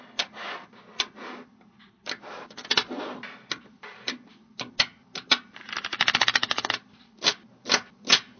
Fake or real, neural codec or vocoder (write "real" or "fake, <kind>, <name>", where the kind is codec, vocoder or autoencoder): real